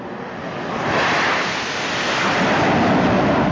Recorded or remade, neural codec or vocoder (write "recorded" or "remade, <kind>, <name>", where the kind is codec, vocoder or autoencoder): recorded